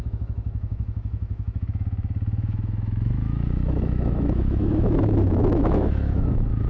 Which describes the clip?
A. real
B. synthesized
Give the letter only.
B